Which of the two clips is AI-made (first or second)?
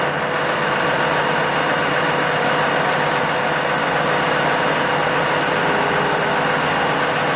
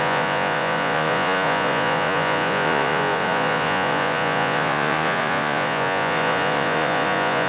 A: second